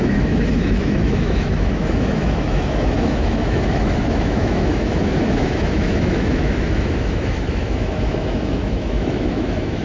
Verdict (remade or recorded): remade